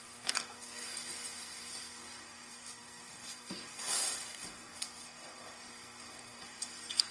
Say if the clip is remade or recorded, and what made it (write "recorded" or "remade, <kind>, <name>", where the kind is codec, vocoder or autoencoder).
remade, codec, SNAC